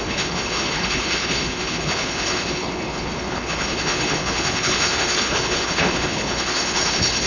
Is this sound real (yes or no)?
no